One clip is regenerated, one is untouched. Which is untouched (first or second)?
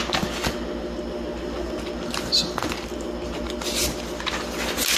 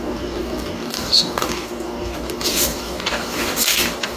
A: first